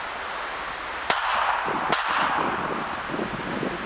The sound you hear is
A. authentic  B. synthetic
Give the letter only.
A